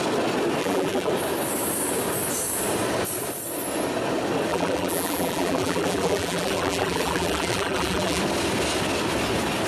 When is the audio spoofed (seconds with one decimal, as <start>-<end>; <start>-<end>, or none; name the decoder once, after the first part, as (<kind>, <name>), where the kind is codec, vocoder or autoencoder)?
0.6-1.1 (vocoder, BigVGAN v2); 4.5-8.2